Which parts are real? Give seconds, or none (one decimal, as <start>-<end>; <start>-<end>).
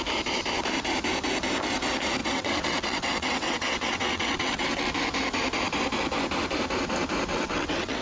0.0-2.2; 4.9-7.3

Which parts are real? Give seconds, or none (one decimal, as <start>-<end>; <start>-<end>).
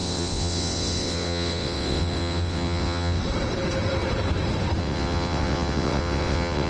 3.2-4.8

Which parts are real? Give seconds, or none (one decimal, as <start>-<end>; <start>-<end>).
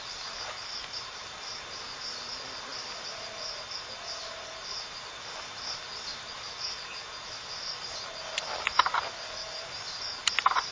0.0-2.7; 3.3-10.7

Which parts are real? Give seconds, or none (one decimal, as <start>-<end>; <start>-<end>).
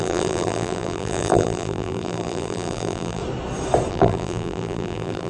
3.2-3.9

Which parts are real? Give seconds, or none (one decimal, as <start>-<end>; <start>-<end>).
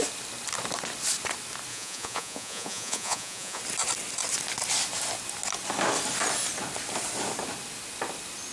0.0-1.7; 3.6-8.5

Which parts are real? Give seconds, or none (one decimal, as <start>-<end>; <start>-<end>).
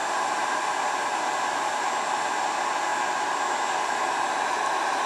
0.0-5.1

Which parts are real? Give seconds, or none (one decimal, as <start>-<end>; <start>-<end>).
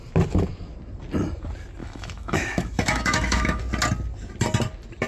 0.0-1.8; 3.6-5.1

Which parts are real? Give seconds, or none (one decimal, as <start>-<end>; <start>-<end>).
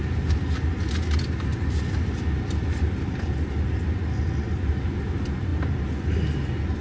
0.0-6.8